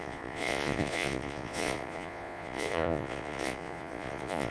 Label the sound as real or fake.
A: fake